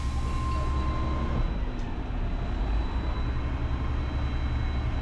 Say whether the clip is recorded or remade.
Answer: recorded